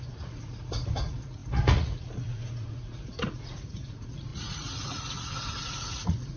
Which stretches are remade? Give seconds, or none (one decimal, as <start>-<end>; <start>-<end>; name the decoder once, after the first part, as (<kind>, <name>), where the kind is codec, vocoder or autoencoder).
0.0-6.4 (vocoder, Vocos)